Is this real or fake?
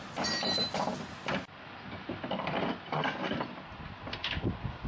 real